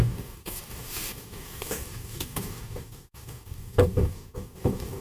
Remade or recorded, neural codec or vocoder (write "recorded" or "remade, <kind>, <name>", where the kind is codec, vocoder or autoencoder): remade, codec, DAC